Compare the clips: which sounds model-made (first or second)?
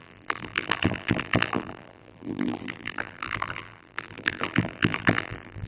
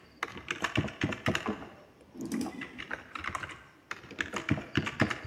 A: first